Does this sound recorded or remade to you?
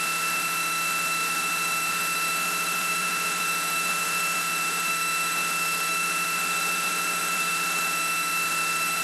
remade